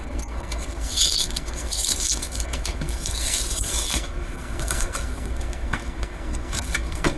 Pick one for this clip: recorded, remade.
remade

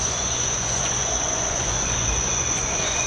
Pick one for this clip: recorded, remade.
remade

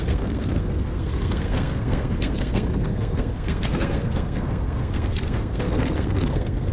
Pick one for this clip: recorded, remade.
remade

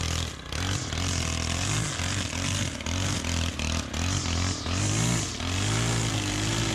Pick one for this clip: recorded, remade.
recorded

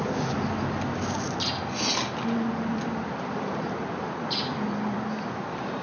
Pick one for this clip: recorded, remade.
recorded